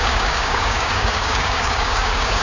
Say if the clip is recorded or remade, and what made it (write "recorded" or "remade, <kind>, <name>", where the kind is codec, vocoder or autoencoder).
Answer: remade, codec, DAC